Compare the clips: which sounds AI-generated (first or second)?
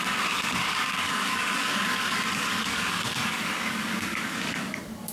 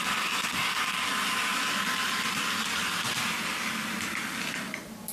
first